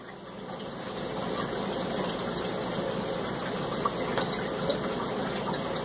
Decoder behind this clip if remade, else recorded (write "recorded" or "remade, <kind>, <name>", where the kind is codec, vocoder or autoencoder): recorded